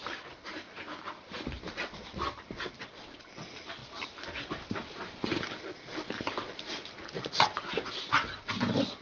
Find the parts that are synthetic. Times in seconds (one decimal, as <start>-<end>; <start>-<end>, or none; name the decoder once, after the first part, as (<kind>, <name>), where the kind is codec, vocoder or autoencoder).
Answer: none

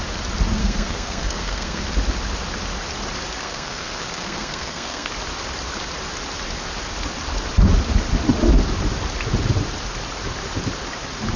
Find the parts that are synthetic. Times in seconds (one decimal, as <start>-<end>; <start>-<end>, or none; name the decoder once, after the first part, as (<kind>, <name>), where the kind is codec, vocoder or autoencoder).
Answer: 0.6-1.8 (codec, SNAC); 3.4-5.1